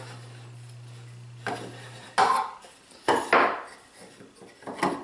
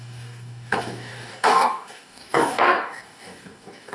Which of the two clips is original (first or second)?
first